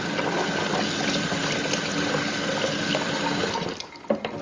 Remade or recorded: recorded